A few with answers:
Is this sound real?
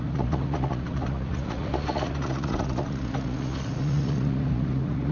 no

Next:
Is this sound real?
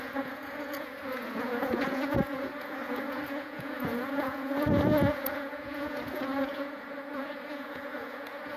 no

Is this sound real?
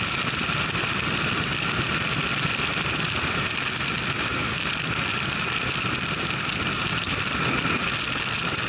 yes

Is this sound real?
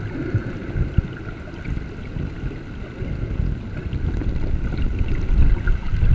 yes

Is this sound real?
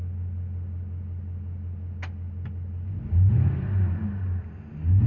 yes